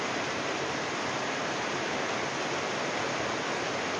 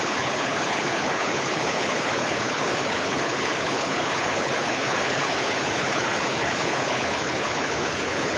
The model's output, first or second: second